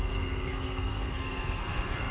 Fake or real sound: fake